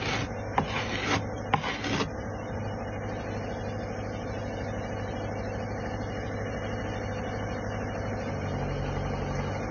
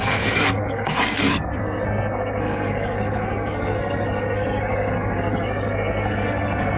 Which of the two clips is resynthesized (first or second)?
second